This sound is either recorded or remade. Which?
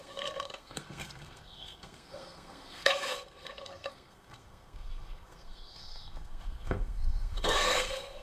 remade